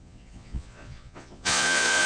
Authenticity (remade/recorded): remade